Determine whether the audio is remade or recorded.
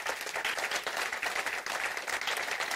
recorded